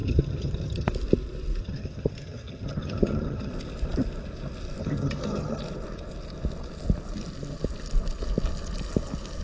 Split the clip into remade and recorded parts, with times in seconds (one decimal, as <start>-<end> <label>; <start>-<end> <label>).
0.0-0.9 remade; 0.9-1.6 recorded; 1.6-3.5 remade; 3.5-4.8 recorded; 4.8-5.6 remade; 5.6-9.4 recorded